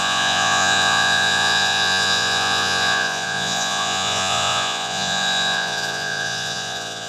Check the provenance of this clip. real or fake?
fake